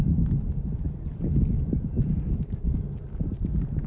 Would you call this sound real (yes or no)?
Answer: yes